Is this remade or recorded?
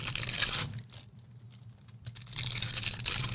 recorded